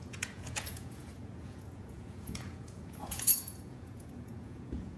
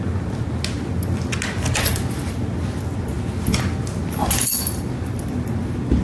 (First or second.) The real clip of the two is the second